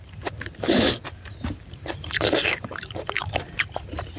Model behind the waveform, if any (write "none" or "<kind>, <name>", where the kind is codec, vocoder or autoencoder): vocoder, BigVGAN v2